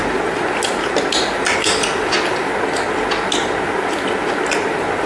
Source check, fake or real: real